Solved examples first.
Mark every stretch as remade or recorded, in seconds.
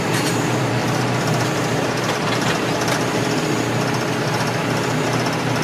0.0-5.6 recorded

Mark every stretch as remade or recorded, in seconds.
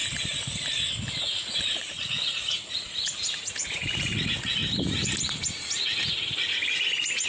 0.0-1.2 recorded; 1.2-4.6 remade; 4.6-7.3 recorded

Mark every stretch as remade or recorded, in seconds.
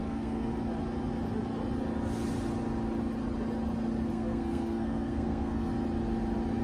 0.0-0.5 remade; 0.5-4.1 recorded; 4.1-5.7 remade; 5.7-6.6 recorded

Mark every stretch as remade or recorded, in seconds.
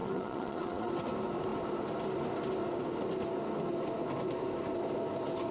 0.0-0.9 remade; 0.9-5.5 recorded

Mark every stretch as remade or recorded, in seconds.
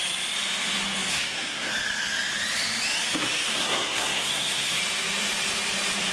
0.0-1.1 recorded; 1.1-1.7 remade; 1.7-3.5 recorded; 3.5-4.8 remade; 4.8-6.1 recorded